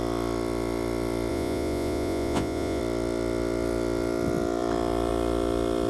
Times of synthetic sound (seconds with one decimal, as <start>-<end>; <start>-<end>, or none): 1.3-2.8